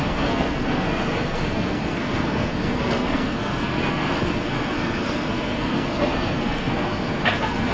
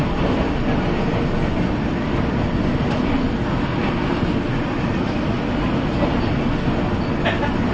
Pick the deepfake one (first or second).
first